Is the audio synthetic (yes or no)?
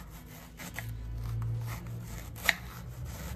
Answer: no